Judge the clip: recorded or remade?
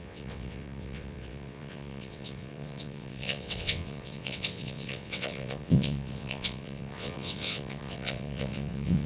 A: remade